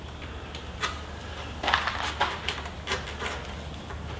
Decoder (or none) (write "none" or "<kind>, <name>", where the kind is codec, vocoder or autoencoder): none